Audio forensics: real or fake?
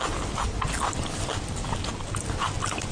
real